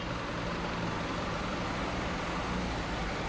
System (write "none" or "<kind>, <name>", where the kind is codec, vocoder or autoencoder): none